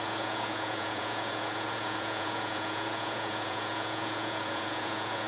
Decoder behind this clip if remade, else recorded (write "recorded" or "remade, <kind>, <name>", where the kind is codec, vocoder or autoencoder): remade, vocoder, Vocos